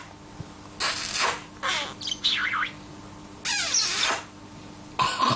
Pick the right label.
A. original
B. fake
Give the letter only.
A